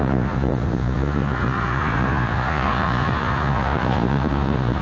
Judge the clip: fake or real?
fake